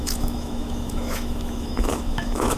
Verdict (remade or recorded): remade